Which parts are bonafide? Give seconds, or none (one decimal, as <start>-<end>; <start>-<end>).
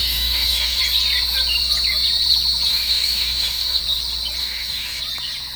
0.8-2.7; 3.8-4.4; 5.0-5.6